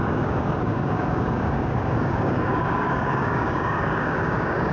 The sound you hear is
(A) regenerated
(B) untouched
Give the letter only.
A